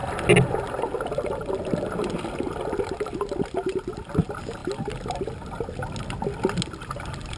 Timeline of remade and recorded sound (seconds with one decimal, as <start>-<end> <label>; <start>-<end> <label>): 0.0-7.4 recorded